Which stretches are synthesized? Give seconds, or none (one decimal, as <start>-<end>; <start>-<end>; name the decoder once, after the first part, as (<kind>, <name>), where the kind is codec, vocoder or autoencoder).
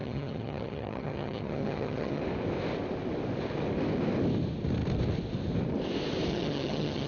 0.0-2.2 (vocoder, HiFi-GAN); 6.3-7.1